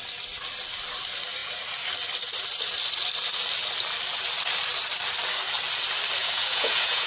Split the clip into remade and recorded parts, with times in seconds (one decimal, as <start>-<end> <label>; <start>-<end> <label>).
0.0-6.2 recorded; 6.2-7.1 remade